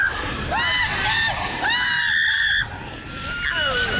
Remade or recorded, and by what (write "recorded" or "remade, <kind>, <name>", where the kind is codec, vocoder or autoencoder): recorded